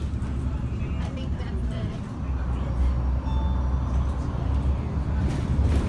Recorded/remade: recorded